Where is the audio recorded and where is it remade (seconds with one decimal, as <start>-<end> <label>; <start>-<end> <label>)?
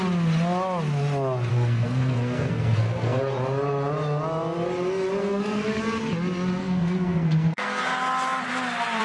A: 0.0-1.5 recorded; 1.5-3.2 remade; 3.2-5.2 recorded; 5.2-5.8 remade; 5.8-6.6 recorded; 6.6-7.8 remade; 7.8-9.0 recorded